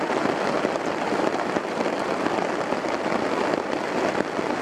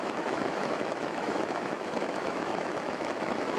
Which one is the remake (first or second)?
second